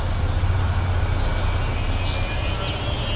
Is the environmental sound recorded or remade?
recorded